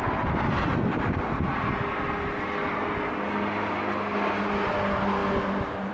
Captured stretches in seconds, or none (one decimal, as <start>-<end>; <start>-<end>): 0.0-5.9